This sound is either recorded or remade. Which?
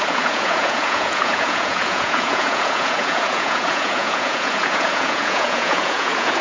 remade